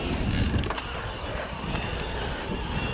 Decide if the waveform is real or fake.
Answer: real